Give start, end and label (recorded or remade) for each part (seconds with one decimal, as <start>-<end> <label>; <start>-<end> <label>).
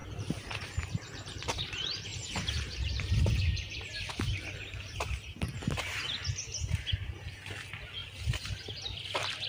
0.0-1.6 remade; 1.6-2.1 recorded; 2.1-4.0 remade; 4.0-9.5 recorded